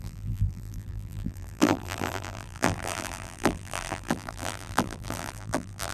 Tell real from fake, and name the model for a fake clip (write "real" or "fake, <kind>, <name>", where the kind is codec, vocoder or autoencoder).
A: fake, vocoder, BigVGAN v2